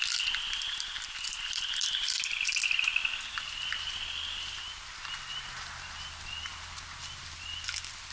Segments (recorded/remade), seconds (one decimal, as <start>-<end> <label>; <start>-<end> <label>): 0.0-8.1 recorded